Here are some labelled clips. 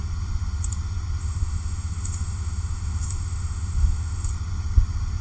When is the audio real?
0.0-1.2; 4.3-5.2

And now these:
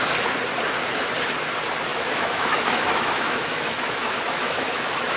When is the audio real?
0.0-1.9

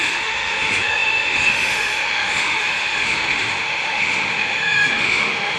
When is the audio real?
none

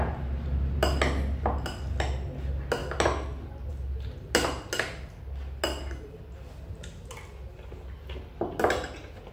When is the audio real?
0.0-9.3

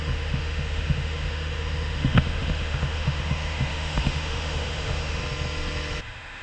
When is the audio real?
5.2-6.0

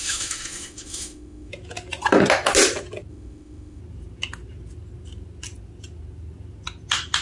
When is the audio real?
1.5-3.1; 3.8-7.2